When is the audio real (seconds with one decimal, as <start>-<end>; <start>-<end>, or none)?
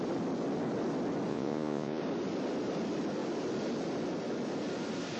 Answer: 0.0-1.3; 2.0-5.2